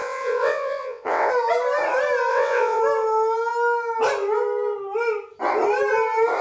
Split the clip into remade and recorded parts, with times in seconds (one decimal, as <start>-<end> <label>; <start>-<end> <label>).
0.0-1.3 remade; 1.3-2.3 recorded; 2.3-2.8 remade; 2.8-6.4 recorded